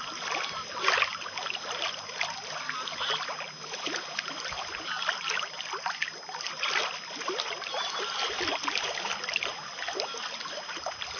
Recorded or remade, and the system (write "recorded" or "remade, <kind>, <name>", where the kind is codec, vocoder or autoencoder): recorded